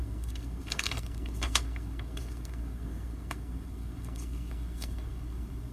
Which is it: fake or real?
fake